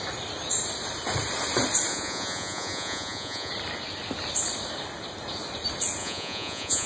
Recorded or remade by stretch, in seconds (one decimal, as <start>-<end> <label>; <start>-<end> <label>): 0.0-1.9 recorded; 1.9-3.5 remade; 3.5-6.0 recorded; 6.0-6.9 remade